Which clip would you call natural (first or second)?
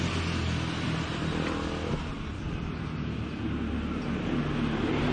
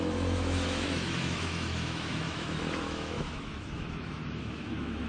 first